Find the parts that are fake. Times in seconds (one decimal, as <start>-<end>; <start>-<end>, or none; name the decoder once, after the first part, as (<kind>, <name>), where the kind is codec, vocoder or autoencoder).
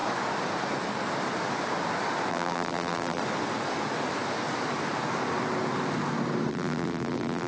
2.3-3.2 (vocoder, BigVGAN v2); 6.5-7.5